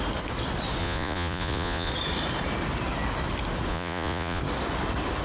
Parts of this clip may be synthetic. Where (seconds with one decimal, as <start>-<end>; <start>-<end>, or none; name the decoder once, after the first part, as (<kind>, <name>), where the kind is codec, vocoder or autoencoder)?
0.8-1.9 (vocoder, Vocos); 3.7-4.4

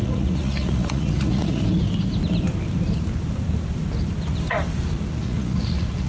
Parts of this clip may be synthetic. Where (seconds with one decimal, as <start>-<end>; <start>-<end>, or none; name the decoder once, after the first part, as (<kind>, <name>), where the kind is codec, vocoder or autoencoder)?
0.0-1.6 (vocoder, Vocos); 5.2-6.1